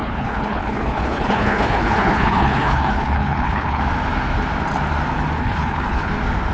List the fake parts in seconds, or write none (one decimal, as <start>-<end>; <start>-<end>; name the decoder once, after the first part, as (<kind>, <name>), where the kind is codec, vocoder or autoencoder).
0.0-3.8 (codec, HILCodec); 5.4-6.1